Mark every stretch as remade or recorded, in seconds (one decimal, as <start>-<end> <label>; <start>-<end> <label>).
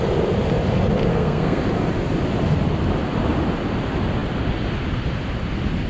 0.0-1.1 recorded; 1.1-1.6 remade; 1.6-5.9 recorded